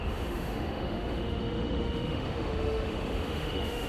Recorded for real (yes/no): no